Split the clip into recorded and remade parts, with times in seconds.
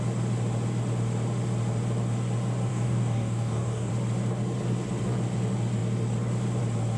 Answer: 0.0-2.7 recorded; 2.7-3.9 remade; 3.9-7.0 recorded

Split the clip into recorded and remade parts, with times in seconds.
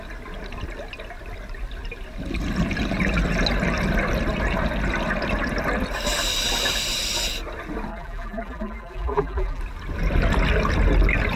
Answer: 0.0-7.9 recorded; 7.9-9.6 remade; 9.6-11.4 recorded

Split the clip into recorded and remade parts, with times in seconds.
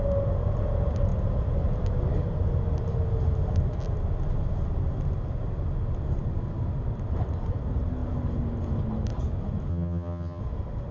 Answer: 0.0-9.7 recorded; 9.7-10.4 remade; 10.4-10.9 recorded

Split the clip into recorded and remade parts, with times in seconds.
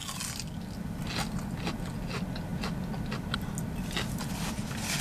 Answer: 0.0-5.0 recorded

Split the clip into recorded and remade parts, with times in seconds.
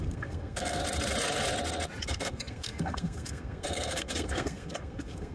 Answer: 0.0-0.8 remade; 0.8-2.1 recorded; 2.1-5.3 remade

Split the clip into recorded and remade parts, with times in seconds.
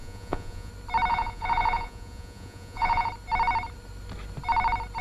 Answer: 0.0-0.7 remade; 0.7-1.1 recorded; 1.1-3.1 remade; 3.1-5.0 recorded